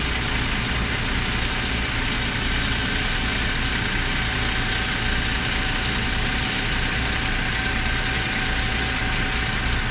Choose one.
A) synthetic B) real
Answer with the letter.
B